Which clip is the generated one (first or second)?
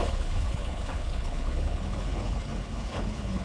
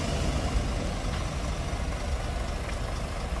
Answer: first